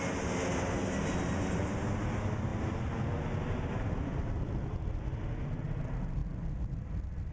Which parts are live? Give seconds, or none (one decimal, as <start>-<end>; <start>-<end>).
0.0-7.3